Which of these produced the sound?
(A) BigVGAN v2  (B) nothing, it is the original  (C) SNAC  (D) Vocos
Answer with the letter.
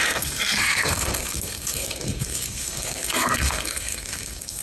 C